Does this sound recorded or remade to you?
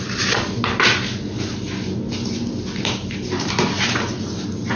recorded